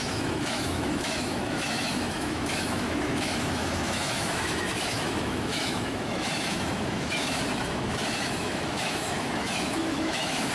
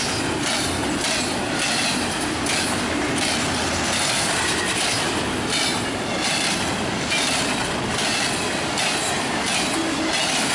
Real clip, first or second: second